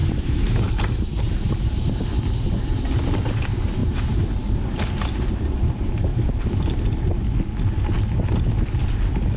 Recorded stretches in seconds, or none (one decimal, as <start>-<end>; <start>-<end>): 2.1-3.8; 5.4-6.1; 6.7-9.4